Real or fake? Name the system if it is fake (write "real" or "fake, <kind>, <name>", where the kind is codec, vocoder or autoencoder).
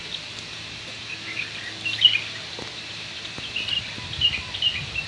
real